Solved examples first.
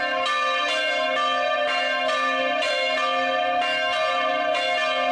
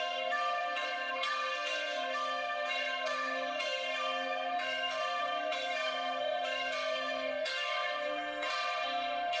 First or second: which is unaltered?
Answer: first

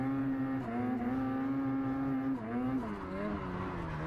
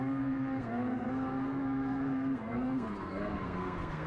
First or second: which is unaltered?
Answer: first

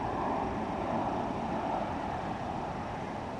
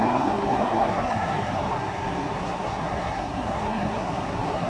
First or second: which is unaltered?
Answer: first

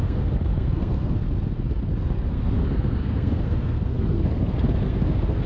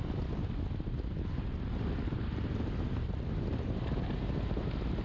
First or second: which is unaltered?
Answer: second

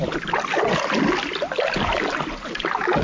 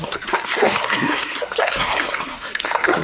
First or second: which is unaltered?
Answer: first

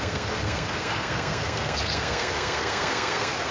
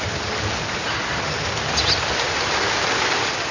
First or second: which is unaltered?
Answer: second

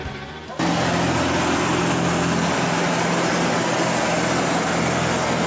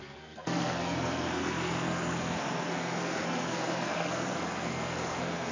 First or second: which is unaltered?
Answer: first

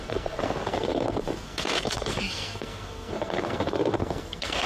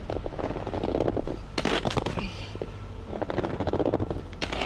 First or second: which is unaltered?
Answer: second